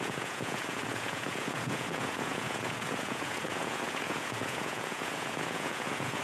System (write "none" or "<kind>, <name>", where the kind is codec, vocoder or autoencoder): vocoder, Vocos